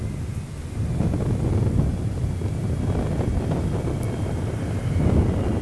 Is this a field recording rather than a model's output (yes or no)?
yes